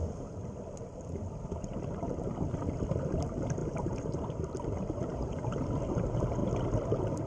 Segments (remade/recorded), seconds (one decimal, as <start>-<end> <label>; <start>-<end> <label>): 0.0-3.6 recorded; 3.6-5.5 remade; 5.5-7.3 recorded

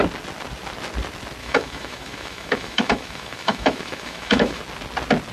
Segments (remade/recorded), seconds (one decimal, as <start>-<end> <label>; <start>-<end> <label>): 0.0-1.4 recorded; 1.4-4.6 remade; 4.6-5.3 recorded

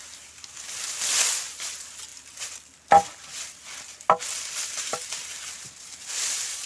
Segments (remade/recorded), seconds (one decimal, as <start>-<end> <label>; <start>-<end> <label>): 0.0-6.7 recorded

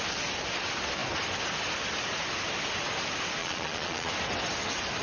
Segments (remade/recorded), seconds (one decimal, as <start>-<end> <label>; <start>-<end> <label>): 0.0-3.4 recorded; 3.4-4.1 remade; 4.1-5.0 recorded